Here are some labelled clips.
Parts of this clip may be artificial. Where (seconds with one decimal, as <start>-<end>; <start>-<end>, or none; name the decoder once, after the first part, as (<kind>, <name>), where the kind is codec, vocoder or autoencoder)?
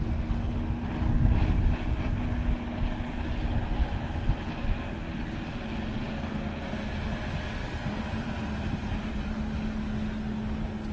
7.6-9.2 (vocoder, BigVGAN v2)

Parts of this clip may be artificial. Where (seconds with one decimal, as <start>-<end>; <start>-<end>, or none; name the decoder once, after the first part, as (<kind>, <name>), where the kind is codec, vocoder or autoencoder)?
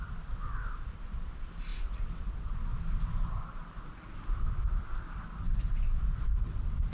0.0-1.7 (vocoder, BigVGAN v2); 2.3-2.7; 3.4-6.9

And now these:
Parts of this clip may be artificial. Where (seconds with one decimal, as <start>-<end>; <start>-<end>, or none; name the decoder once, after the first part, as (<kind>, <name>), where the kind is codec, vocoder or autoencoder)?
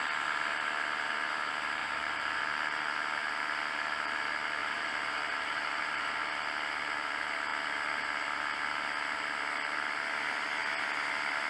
1.8-2.4 (vocoder, BigVGAN v2); 4.6-6.2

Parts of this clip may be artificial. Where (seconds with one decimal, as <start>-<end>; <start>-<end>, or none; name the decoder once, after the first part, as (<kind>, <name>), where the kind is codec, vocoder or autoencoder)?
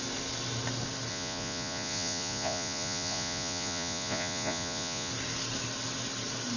1.1-5.1 (vocoder, Vocos)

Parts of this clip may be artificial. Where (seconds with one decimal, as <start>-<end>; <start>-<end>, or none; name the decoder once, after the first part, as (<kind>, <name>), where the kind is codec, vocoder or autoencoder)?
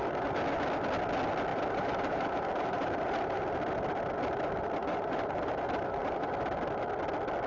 1.5-3.4 (vocoder, BigVGAN v2); 4.8-6.3